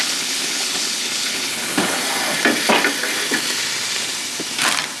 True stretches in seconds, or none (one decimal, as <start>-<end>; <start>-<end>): 2.0-5.0